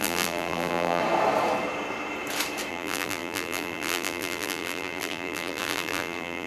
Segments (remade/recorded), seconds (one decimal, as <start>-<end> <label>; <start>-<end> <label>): 0.0-1.0 remade; 1.0-2.7 recorded; 2.7-6.5 remade